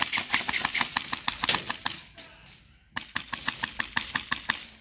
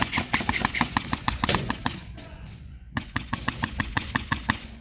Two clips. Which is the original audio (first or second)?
first